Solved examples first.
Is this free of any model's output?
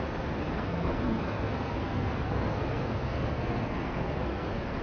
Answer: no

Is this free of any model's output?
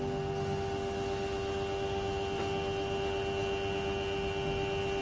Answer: yes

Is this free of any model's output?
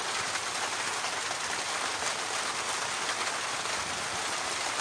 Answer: yes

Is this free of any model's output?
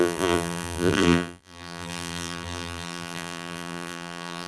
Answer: no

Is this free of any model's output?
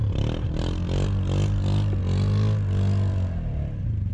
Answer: yes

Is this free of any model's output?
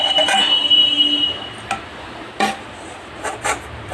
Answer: yes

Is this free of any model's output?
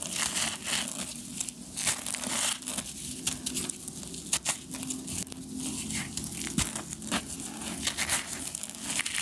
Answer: yes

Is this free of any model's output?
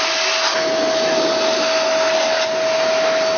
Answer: yes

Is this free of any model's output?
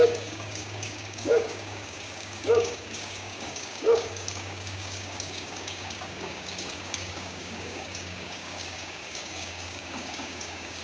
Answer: no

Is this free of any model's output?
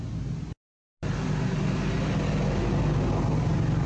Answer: yes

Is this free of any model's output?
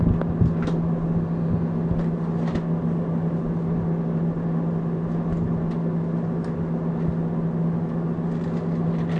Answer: yes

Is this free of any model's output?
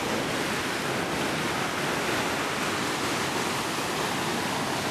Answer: yes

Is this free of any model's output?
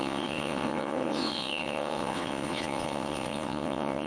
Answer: no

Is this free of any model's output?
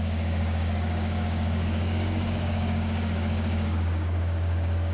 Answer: no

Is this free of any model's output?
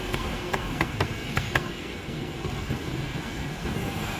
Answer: no